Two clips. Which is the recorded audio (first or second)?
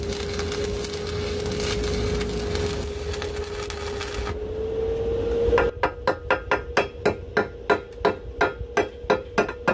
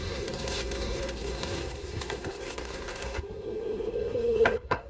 first